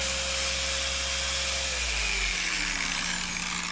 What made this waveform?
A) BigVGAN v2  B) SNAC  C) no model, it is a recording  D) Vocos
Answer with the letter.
C